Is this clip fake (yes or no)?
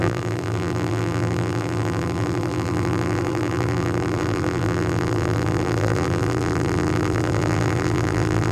yes